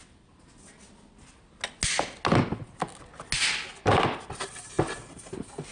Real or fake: real